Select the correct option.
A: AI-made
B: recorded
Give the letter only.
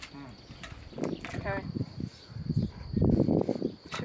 B